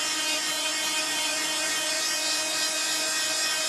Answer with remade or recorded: remade